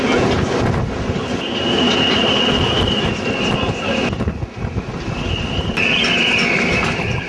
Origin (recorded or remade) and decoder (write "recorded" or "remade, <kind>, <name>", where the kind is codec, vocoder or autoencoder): recorded